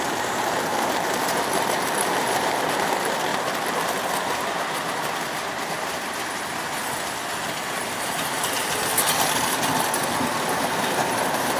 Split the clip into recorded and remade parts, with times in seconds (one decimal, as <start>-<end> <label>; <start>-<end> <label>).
0.0-0.7 remade; 0.7-1.2 recorded; 1.2-3.3 remade; 3.3-7.7 recorded; 7.7-8.9 remade; 8.9-10.5 recorded; 10.5-11.6 remade